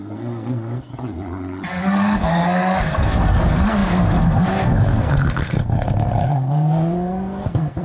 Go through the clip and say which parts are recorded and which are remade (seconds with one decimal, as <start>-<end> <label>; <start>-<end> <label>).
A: 0.0-0.9 remade; 0.9-1.7 recorded; 1.7-7.8 remade